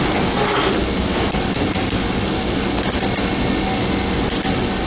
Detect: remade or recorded recorded